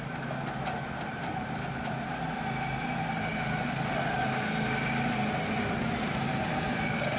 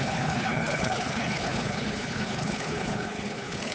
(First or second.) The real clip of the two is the first